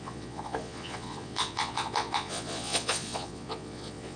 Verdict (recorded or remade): remade